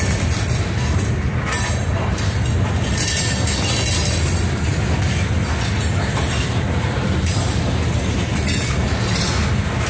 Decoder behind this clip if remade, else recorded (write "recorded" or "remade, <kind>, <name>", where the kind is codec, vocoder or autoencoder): recorded